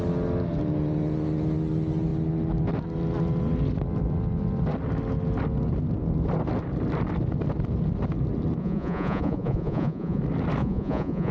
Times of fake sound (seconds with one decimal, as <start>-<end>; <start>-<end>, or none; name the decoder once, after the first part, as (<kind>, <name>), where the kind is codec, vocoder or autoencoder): 8.6-10.2 (vocoder, Vocos); 10.6-11.3